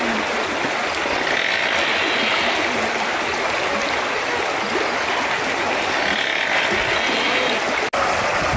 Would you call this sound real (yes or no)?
yes